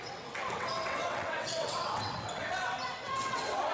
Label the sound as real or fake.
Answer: fake